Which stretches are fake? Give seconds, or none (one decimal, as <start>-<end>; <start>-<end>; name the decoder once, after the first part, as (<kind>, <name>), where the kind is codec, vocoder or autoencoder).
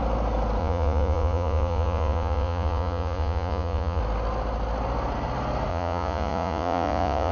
0.6-4.0 (vocoder, Vocos); 5.7-7.3